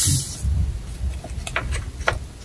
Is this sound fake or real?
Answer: real